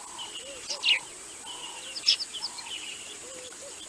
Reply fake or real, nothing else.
real